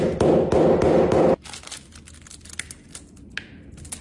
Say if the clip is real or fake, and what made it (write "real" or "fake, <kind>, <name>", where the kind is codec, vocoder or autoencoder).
real